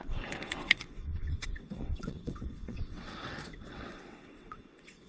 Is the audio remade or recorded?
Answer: remade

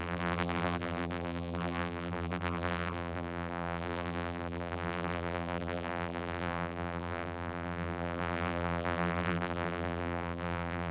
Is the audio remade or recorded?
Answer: remade